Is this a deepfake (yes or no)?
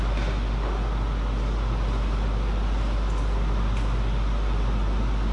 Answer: no